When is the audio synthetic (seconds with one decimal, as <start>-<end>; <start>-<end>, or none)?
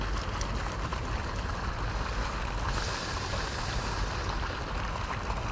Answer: 0.9-1.5